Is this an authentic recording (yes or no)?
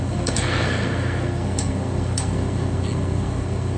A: no